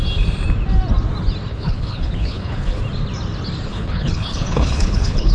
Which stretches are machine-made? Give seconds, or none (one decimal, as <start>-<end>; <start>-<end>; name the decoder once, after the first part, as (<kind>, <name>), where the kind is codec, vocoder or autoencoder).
1.5-2.8 (codec, HILCodec); 3.7-5.3